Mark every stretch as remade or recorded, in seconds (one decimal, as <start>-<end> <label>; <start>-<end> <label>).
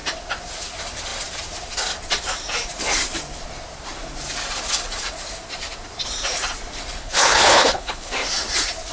0.0-7.0 recorded; 7.0-8.1 remade; 8.1-8.9 recorded